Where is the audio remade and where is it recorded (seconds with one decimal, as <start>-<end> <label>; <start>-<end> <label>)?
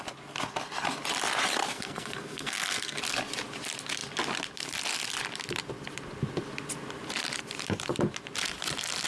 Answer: 0.0-1.6 recorded; 1.6-3.0 remade; 3.0-9.1 recorded